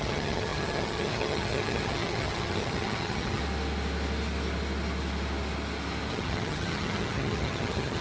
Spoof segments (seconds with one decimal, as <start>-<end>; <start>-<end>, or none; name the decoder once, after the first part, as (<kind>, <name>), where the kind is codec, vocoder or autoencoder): 0.0-3.4 (vocoder, HiFi-GAN); 6.1-8.0

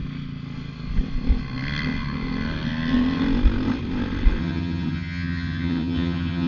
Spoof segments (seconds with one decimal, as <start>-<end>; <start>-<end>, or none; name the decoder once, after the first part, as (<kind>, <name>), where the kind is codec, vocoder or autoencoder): 4.4-6.5 (vocoder, HiFi-GAN)

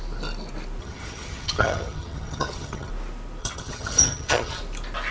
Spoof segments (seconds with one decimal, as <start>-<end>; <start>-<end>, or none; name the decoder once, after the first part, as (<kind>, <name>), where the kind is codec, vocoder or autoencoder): 0.8-2.9 (vocoder, HiFi-GAN); 3.4-4.6

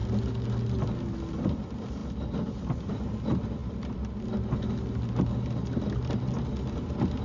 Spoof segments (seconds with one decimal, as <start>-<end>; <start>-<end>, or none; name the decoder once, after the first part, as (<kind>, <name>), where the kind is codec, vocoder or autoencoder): none

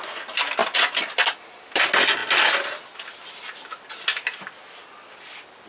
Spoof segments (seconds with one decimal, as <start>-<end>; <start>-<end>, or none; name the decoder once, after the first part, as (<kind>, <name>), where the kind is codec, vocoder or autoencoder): none

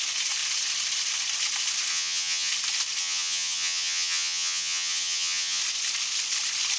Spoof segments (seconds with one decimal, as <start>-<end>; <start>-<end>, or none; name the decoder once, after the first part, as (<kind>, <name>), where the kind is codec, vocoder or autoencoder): 1.9-2.5 (vocoder, HiFi-GAN); 3.0-5.6

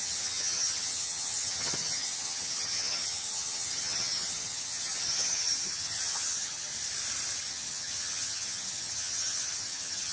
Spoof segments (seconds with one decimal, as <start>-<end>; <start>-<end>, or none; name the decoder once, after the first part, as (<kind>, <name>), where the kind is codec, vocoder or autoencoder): 0.0-6.7 (vocoder, HiFi-GAN); 7.5-10.1